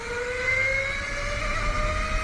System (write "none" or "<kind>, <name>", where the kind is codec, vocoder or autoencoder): none